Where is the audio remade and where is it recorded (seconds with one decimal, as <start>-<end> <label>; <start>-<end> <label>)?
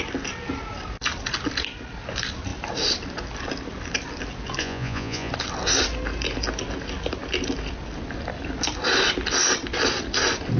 0.0-4.6 recorded; 4.6-5.3 remade; 5.3-10.6 recorded